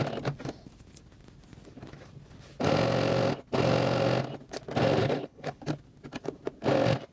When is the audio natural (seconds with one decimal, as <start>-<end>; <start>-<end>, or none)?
0.0-5.0; 5.6-7.1